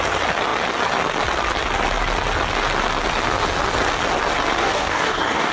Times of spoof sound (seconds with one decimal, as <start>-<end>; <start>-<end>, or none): 4.6-5.5